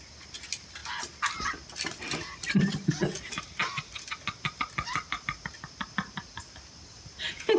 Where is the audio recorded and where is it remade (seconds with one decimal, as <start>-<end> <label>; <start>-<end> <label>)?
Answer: 0.0-7.6 recorded